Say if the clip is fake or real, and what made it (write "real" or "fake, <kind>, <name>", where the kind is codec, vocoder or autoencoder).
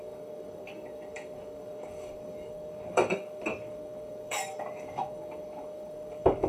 fake, codec, DAC